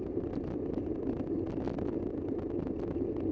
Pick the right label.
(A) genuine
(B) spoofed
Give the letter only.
A